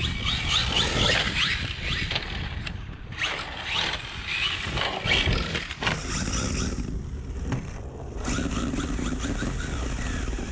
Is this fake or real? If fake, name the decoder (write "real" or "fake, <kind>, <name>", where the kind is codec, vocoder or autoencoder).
real